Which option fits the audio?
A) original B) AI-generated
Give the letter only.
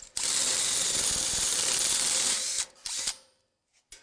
B